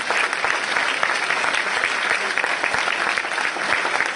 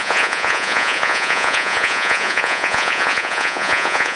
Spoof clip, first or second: second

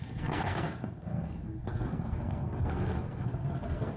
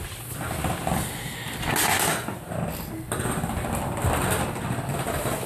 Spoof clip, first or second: first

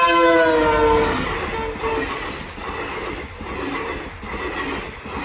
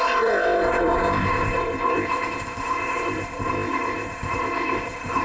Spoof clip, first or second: second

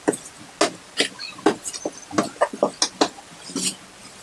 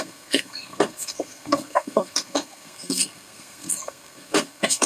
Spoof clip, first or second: second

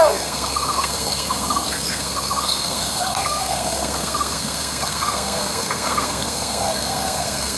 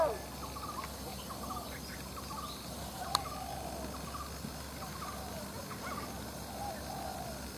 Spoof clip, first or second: first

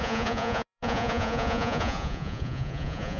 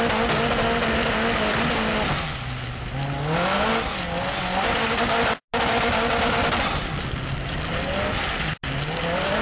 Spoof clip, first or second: first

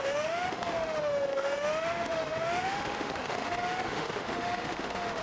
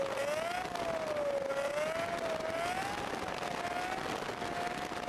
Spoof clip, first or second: first